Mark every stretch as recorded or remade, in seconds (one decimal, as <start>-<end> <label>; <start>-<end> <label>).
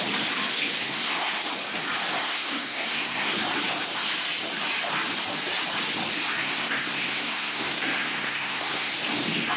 0.0-0.8 recorded; 0.8-1.5 remade; 1.5-2.2 recorded; 2.2-3.3 remade; 3.3-6.4 recorded; 6.4-8.9 remade; 8.9-9.6 recorded